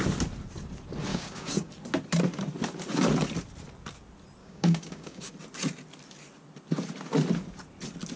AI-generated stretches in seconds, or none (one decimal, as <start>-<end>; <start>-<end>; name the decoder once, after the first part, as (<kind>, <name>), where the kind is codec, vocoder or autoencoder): 1.1-1.7 (codec, DAC); 4.4-5.3